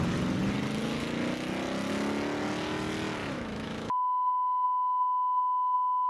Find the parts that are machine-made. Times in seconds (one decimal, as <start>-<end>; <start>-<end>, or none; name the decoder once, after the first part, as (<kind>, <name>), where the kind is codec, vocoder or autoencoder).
3.2-6.1 (autoencoder, DAC-VAE)